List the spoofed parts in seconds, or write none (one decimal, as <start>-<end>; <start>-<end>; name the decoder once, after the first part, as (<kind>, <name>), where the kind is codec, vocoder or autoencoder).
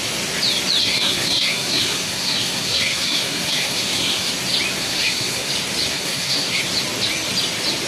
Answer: 0.8-4.3 (codec, SNAC); 4.8-5.5; 5.9-6.6